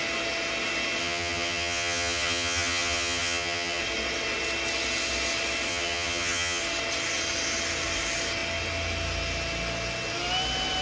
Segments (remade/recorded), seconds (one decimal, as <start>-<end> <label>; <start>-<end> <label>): 0.0-1.0 recorded; 1.0-3.8 remade; 3.8-5.7 recorded; 5.7-6.6 remade; 6.6-10.8 recorded